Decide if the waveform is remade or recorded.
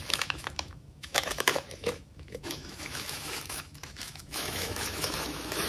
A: remade